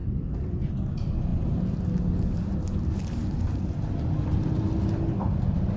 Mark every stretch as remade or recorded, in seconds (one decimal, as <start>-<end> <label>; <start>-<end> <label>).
0.0-5.8 recorded